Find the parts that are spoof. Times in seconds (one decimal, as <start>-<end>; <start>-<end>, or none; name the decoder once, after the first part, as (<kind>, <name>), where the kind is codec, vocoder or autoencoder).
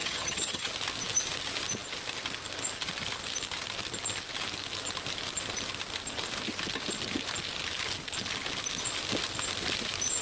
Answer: 0.0-0.7 (vocoder, HiFi-GAN)